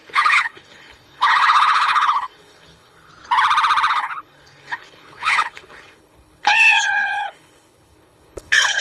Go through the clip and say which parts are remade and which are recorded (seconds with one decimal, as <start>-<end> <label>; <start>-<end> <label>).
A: 0.0-3.1 remade; 3.1-3.9 recorded; 3.9-8.8 remade